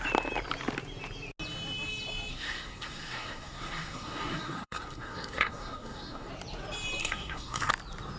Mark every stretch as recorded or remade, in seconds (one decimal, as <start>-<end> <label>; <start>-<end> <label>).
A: 0.0-2.3 recorded; 2.3-6.3 remade; 6.3-7.0 recorded; 7.0-7.7 remade; 7.7-8.2 recorded